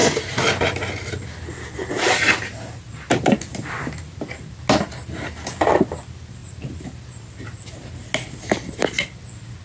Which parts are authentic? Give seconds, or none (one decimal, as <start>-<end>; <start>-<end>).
0.0-1.8; 3.4-6.4; 7.2-9.6